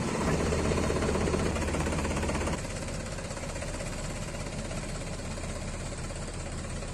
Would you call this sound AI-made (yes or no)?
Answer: yes